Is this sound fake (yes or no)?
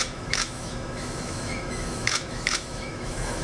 yes